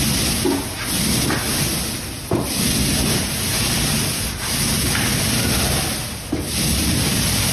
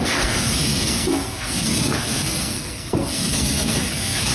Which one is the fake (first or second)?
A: second